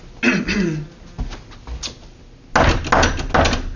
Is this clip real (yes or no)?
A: yes